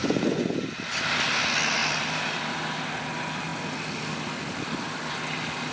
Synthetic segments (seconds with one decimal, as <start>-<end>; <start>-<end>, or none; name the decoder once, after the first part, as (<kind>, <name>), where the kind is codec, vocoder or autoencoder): 0.0-0.5 (vocoder, Vocos)